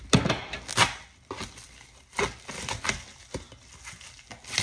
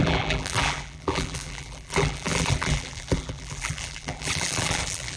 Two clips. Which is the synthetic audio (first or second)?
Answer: second